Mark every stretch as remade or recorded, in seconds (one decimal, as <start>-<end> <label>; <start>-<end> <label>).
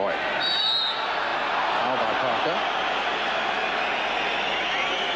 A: 0.0-5.2 recorded